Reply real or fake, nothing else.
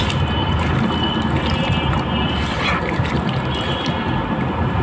real